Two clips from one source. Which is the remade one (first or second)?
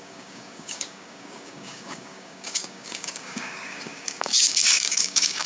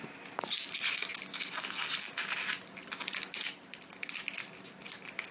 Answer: first